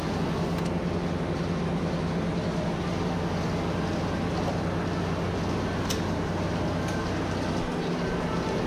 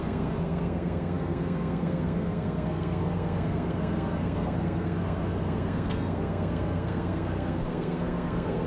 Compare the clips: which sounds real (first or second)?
first